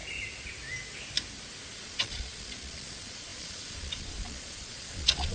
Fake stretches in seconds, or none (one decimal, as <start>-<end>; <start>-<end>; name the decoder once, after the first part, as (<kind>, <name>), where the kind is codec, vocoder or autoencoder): 1.7-5.3 (vocoder, Vocos)